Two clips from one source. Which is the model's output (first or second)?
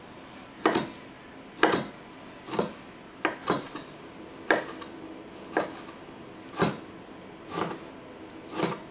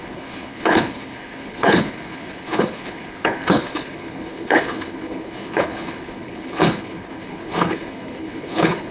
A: second